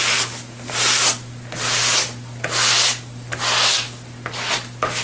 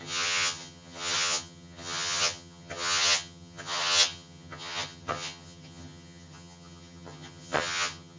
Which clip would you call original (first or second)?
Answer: first